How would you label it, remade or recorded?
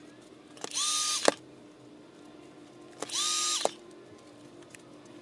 recorded